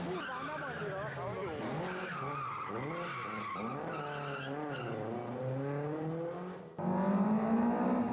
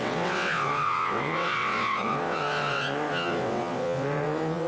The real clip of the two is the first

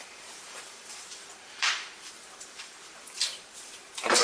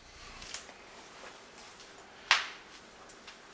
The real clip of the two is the second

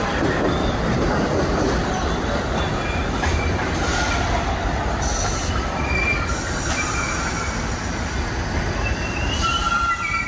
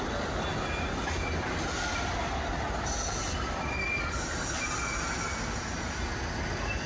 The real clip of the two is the second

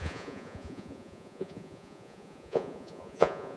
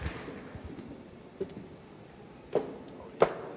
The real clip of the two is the second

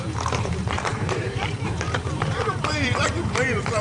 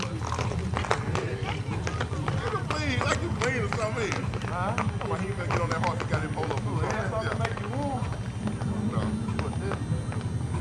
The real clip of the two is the second